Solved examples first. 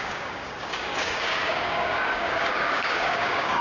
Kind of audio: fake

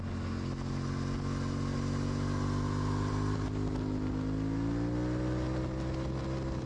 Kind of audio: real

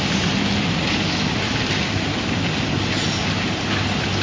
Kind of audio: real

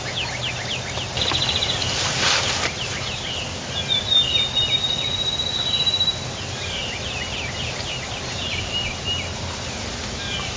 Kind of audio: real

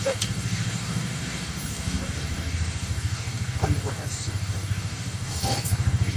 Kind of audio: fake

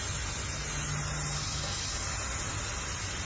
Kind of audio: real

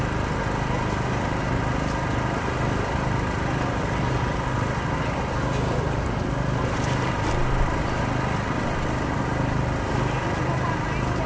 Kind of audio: real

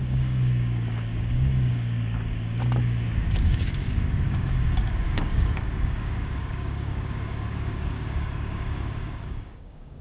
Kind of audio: fake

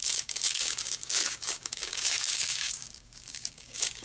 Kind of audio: fake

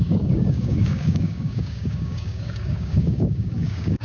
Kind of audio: fake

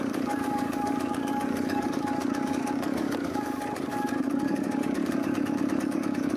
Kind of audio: fake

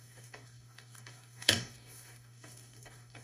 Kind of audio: fake